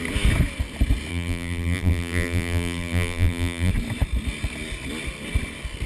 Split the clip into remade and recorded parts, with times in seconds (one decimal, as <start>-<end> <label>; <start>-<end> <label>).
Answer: 0.0-1.1 recorded; 1.1-3.7 remade; 3.7-5.9 recorded